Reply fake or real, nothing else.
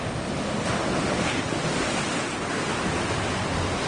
real